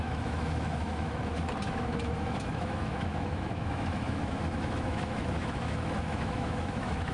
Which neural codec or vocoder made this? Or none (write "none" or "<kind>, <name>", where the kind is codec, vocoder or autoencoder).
autoencoder, DAC-VAE